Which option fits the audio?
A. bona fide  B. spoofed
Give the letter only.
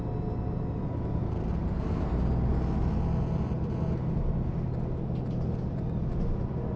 A